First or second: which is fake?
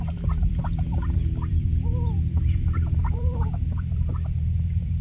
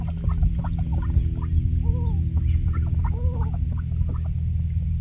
first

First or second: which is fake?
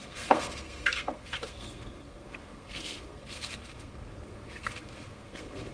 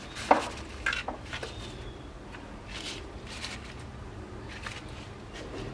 first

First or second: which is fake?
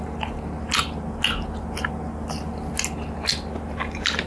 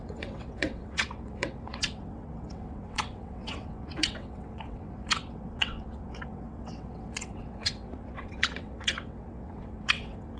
second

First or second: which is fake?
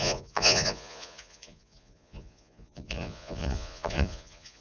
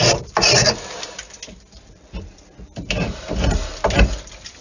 first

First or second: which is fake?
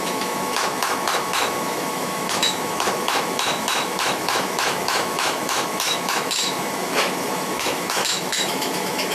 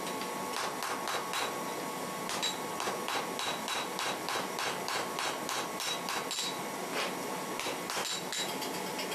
first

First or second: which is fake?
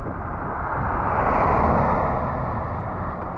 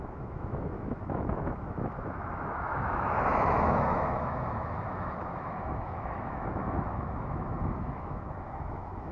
second